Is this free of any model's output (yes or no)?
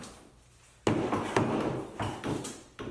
yes